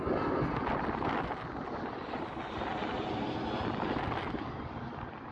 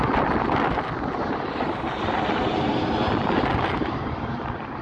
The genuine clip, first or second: first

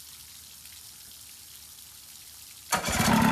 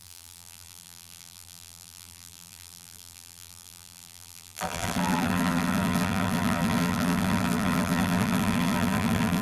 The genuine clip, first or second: first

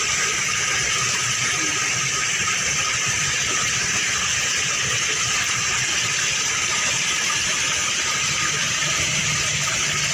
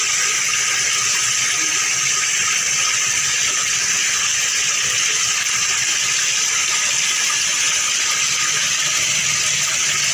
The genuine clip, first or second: second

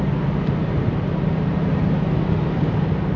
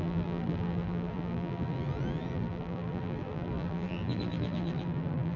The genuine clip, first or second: first